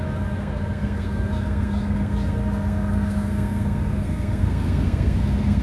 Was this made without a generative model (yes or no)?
no